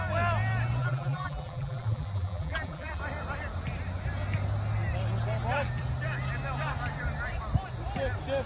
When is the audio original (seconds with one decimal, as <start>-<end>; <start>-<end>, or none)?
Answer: 0.0-0.8; 3.0-8.5